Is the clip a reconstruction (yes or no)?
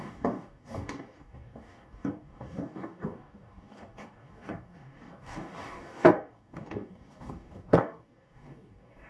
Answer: yes